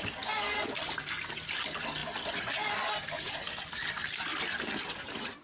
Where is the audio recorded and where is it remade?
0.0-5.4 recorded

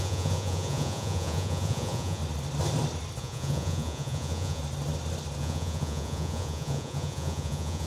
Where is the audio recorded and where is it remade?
0.0-2.2 remade; 2.2-3.2 recorded; 3.2-4.6 remade; 4.6-5.4 recorded; 5.4-7.9 remade